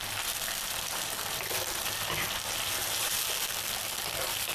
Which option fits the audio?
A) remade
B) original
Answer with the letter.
A